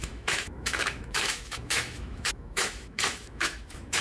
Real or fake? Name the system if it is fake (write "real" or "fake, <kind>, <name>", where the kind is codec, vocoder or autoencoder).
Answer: fake, autoencoder, DAC-VAE